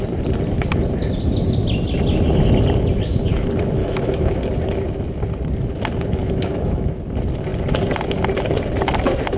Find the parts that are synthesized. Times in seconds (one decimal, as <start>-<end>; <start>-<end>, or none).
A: 3.8-4.4; 6.2-7.0